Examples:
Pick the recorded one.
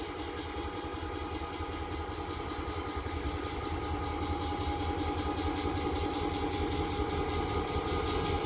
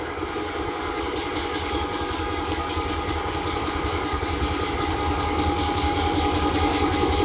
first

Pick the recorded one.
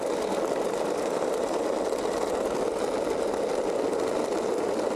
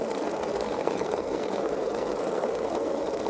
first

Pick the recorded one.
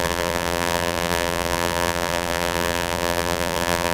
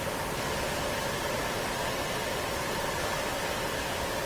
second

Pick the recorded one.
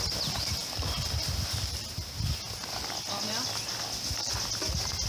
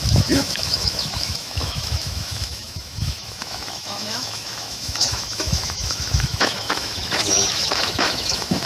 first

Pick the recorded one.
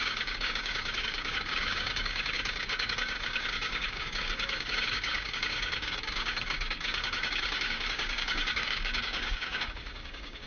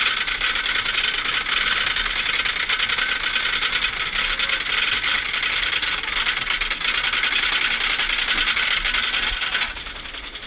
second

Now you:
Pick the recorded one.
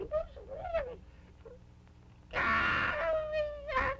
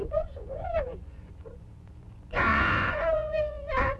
first